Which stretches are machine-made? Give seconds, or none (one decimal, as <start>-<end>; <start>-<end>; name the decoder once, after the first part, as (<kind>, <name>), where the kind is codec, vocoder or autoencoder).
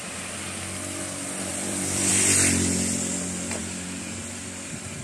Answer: 1.5-2.1 (vocoder, BigVGAN v2); 3.6-5.0